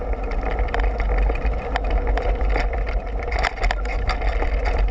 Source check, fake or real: real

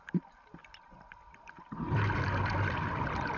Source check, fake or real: real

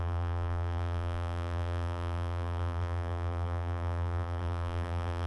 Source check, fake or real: fake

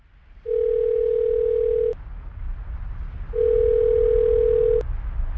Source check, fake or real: real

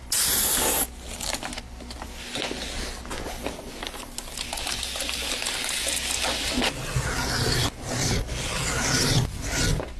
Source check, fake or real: real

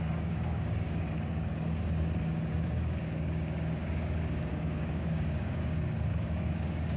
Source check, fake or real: fake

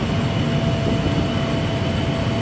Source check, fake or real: real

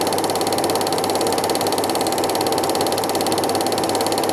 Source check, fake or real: real